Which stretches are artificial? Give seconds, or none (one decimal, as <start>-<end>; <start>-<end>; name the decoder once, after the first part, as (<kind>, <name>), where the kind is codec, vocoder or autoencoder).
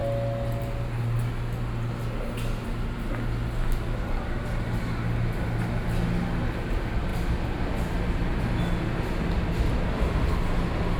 none